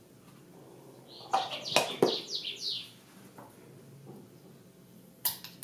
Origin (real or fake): real